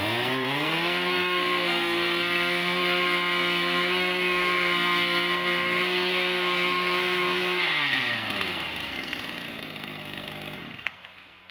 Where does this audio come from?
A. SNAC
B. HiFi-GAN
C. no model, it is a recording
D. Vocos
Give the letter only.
A